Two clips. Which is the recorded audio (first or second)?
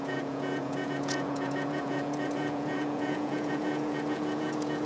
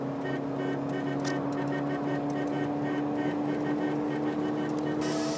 second